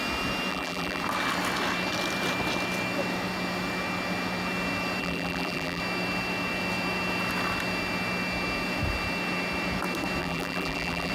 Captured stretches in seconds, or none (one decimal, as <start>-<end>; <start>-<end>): 0.0-0.5; 1.0-5.0; 5.8-10.2